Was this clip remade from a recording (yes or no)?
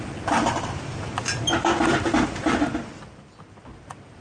no